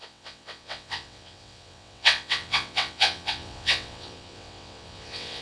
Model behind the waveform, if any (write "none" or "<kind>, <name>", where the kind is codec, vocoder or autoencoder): vocoder, WaveNeXt